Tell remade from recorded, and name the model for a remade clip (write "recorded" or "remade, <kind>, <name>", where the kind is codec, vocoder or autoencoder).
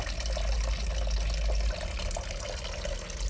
recorded